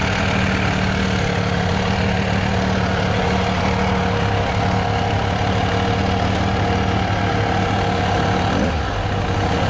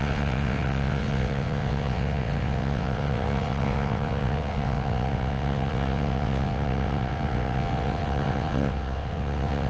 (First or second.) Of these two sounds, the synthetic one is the second